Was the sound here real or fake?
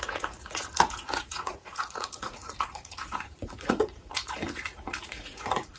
fake